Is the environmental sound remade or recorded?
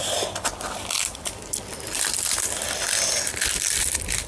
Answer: recorded